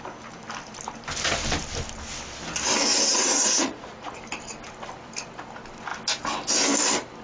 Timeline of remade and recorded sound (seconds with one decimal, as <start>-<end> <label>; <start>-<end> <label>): 0.0-3.1 recorded; 3.1-4.2 remade; 4.2-7.2 recorded